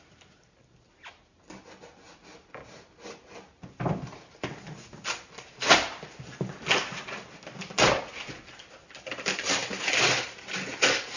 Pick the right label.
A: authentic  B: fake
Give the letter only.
A